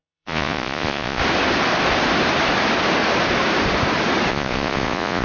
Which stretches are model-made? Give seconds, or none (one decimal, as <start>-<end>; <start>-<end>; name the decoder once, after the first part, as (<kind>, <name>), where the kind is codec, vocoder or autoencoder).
0.0-1.2 (vocoder, Vocos); 4.3-5.2